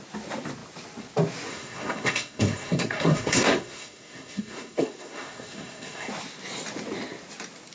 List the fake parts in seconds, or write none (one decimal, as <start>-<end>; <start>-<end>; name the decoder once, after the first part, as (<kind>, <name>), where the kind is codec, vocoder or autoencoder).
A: 1.5-6.1 (codec, SNAC)